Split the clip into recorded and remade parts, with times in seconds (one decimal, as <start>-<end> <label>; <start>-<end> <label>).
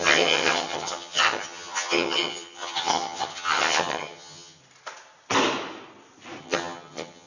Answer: 0.0-4.6 remade; 4.6-6.4 recorded; 6.4-7.3 remade